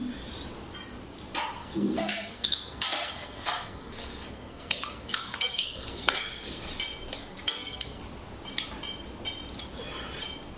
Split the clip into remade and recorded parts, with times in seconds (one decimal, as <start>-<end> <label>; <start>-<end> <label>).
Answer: 0.0-1.6 recorded; 1.6-6.7 remade; 6.7-7.2 recorded; 7.2-8.0 remade; 8.0-10.6 recorded